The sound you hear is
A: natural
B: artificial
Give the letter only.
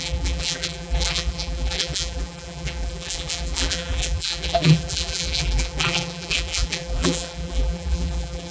B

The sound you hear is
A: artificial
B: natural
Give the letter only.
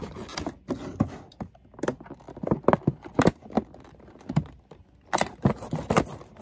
B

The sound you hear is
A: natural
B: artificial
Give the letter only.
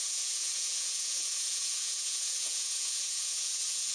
B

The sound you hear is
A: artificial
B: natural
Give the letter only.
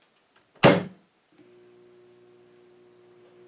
B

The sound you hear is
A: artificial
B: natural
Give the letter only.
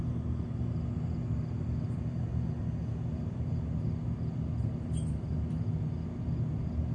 B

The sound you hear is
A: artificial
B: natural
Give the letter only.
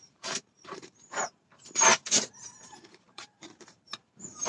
A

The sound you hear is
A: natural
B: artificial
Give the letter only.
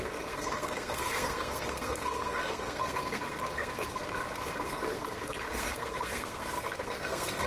B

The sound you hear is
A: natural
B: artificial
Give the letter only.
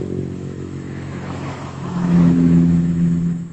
B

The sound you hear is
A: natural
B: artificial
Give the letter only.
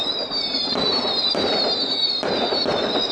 B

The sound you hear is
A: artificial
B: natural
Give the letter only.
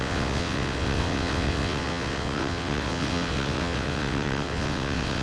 A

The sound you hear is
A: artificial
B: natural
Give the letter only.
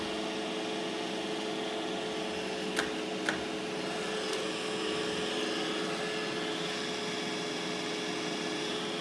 B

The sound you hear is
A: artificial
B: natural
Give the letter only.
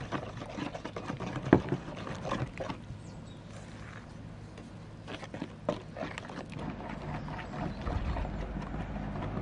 B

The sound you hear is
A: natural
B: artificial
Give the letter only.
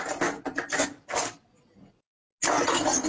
A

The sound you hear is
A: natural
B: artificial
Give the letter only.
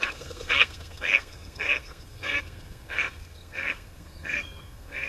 B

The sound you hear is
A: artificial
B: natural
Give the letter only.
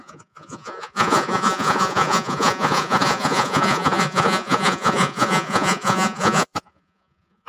A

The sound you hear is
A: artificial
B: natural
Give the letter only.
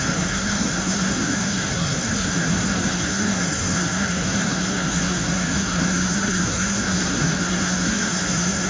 A